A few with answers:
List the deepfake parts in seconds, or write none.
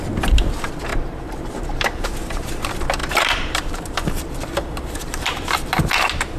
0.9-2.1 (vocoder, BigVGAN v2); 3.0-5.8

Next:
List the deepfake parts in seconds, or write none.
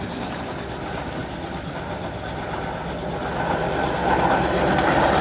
none